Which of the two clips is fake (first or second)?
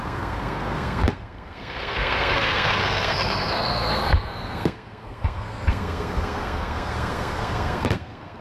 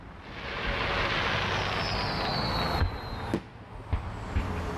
first